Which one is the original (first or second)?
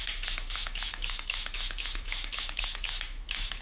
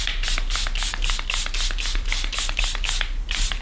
second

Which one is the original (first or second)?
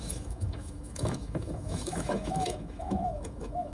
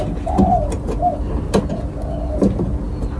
second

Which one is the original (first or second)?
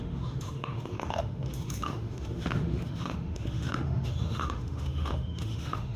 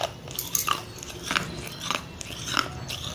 second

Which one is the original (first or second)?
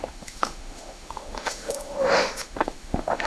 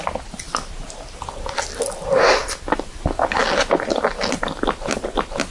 second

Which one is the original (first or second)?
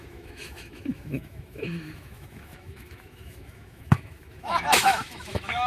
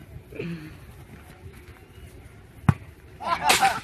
second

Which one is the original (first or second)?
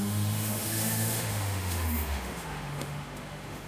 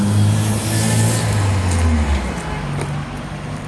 second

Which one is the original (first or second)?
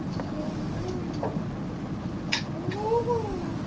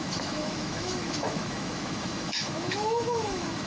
first